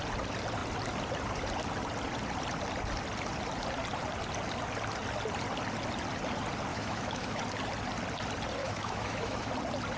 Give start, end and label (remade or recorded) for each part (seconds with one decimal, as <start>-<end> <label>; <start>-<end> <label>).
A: 0.0-6.7 recorded; 6.7-7.4 remade; 7.4-8.6 recorded; 8.6-9.5 remade; 9.5-10.0 recorded